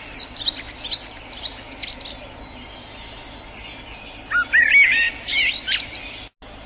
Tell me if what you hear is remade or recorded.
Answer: recorded